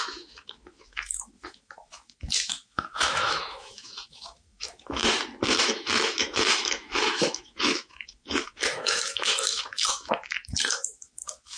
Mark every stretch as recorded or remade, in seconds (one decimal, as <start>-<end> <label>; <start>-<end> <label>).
0.0-5.0 remade; 5.0-5.5 recorded; 5.5-11.6 remade